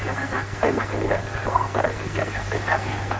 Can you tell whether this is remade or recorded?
remade